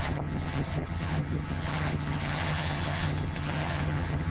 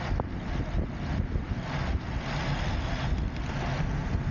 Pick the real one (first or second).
second